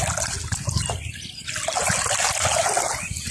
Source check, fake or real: real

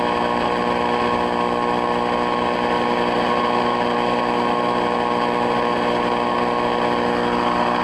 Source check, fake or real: real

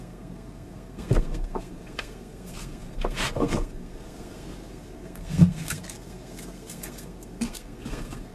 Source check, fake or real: fake